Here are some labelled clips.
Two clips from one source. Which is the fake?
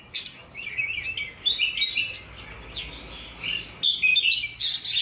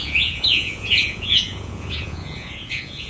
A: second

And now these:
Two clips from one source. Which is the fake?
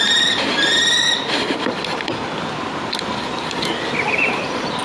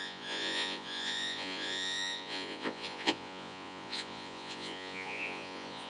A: second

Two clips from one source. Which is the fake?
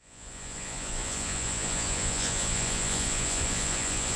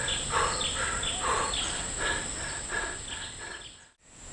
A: first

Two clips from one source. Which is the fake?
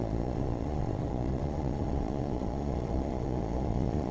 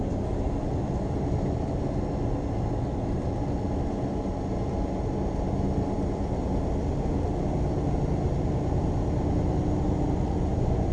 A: first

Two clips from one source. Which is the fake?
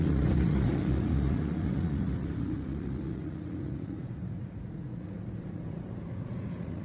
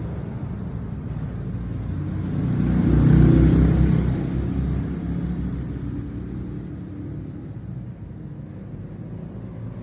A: first